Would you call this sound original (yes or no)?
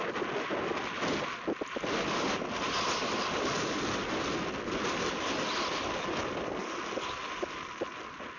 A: yes